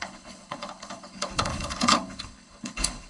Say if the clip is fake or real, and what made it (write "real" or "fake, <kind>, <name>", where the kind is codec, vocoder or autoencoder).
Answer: fake, codec, HILCodec